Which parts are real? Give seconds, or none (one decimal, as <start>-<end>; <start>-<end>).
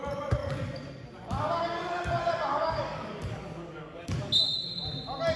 0.0-2.5; 4.4-5.4